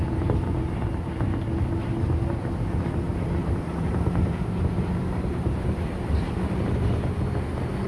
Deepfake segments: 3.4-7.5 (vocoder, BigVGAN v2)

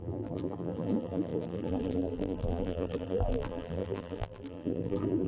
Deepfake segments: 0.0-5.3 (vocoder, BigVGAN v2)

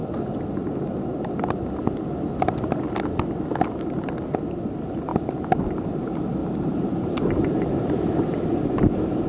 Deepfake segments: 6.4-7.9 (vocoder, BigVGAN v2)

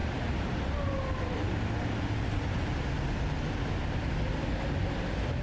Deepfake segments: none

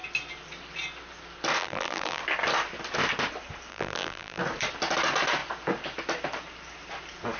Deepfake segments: 1.6-2.2 (vocoder, BigVGAN v2); 3.7-4.4